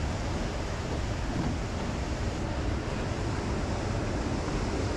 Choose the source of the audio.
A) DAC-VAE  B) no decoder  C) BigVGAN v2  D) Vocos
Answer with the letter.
B